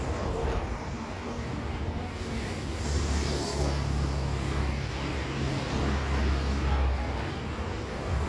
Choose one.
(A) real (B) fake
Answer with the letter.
B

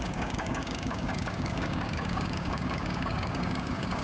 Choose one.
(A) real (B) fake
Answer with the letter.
B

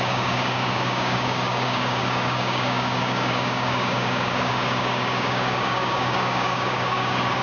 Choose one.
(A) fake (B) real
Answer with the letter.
A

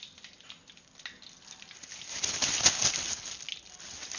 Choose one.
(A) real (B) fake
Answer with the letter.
A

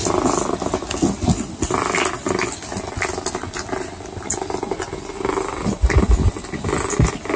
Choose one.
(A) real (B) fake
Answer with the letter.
A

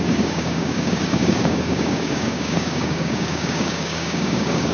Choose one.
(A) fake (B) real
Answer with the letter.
A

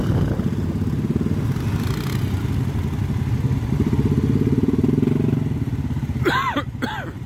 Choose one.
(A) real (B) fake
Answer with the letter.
A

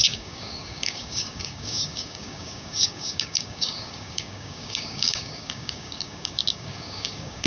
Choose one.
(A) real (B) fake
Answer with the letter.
B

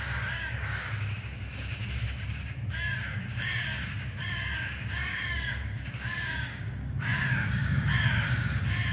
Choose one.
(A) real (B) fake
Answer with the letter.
B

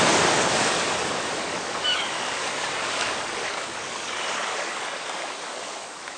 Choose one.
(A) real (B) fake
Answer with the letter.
B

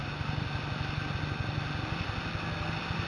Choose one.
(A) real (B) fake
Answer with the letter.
A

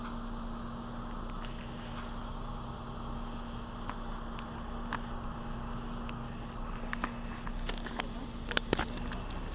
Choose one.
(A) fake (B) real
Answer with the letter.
B